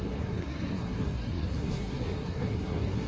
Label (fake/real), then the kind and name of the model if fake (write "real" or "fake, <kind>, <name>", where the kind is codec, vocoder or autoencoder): fake, codec, SNAC